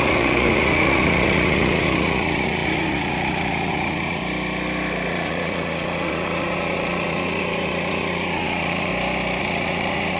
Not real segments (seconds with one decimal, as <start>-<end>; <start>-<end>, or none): 0.0-4.2; 5.1-8.9; 9.4-10.2